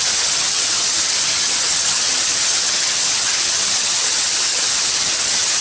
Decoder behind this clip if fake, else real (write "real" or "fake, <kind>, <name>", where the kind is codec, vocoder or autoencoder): fake, vocoder, HiFi-GAN